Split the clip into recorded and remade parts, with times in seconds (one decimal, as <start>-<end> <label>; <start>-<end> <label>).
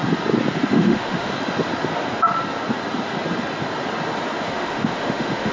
0.0-0.7 recorded; 0.7-1.3 remade; 1.3-4.5 recorded; 4.5-5.5 remade